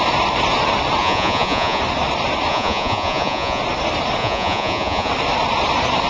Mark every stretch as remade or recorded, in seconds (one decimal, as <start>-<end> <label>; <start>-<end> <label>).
0.0-1.0 recorded; 1.0-1.8 remade; 1.8-2.5 recorded; 2.5-3.6 remade; 3.6-4.2 recorded; 4.2-5.1 remade; 5.1-6.1 recorded